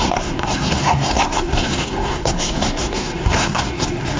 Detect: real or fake fake